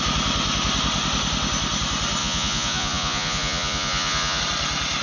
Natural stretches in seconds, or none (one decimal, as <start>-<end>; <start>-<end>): 0.0-2.2; 4.4-5.0